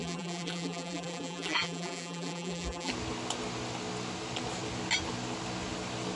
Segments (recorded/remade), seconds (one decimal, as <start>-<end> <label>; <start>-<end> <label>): 0.0-2.9 remade; 2.9-6.2 recorded